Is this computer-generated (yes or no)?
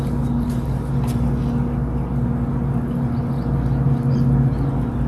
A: no